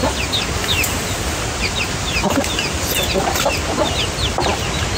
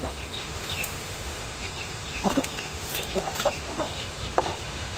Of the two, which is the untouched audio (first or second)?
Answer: first